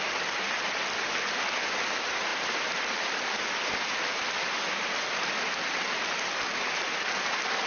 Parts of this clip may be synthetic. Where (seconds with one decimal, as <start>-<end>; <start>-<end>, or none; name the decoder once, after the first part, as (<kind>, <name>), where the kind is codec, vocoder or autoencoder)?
none